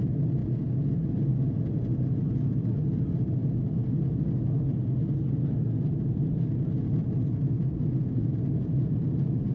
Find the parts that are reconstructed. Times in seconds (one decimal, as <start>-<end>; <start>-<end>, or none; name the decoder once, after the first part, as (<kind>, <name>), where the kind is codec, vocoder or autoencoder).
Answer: 0.0-0.4 (vocoder, BigVGAN v2); 0.9-1.3; 2.4-3.4; 6.9-9.5